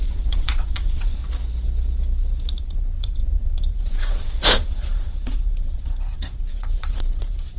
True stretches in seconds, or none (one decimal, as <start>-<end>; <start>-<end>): 1.2-2.6

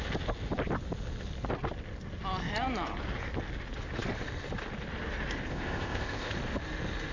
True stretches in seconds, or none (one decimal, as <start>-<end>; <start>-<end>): 0.0-5.5; 6.3-7.1

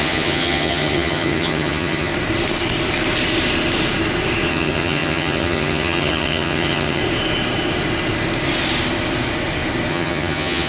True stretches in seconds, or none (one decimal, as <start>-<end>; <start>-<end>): 2.1-4.5; 7.0-9.9